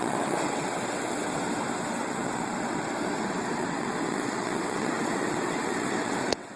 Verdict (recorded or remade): remade